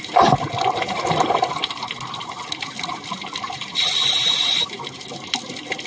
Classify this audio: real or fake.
real